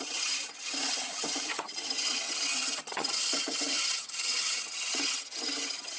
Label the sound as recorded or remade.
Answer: remade